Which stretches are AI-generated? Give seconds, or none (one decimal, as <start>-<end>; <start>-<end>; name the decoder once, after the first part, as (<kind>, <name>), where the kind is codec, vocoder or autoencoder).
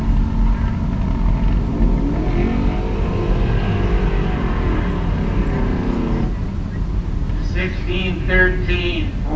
none